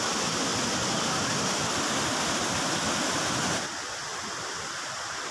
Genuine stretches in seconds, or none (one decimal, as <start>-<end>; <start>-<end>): 0.0-5.3